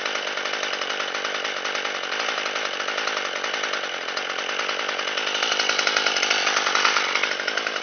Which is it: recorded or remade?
recorded